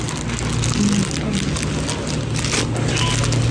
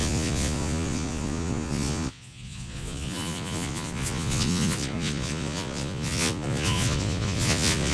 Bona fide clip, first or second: first